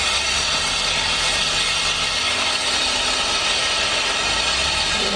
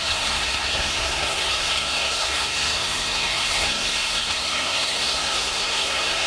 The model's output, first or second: second